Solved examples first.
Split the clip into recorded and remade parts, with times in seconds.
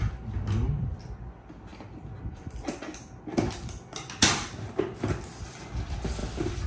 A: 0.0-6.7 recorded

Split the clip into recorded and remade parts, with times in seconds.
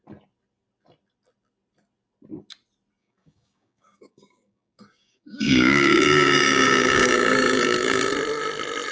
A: 0.0-3.0 recorded; 3.0-8.1 remade; 8.1-8.9 recorded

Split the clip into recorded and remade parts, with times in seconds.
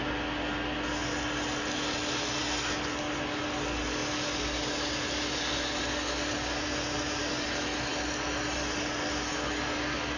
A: 0.0-10.2 recorded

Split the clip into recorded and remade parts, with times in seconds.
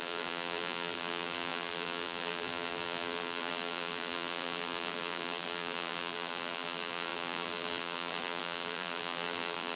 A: 0.0-9.8 remade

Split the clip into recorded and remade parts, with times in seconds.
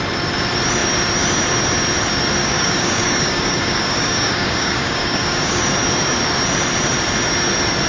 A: 0.0-2.4 recorded; 2.4-5.6 remade; 5.6-7.9 recorded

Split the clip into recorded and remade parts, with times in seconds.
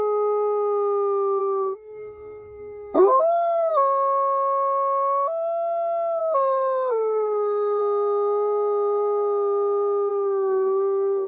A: 0.0-1.4 recorded; 1.4-3.7 remade; 3.7-6.2 recorded; 6.2-7.8 remade; 7.8-10.1 recorded; 10.1-11.3 remade